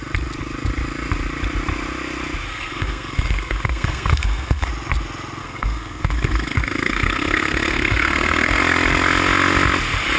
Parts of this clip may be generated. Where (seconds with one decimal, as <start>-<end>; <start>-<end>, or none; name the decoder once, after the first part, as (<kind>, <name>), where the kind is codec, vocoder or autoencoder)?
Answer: 2.5-4.7 (codec, SNAC); 5.4-8.6